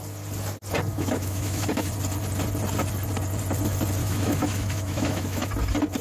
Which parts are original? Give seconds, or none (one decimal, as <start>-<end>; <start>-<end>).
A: 0.0-0.9; 1.9-4.0; 5.5-6.0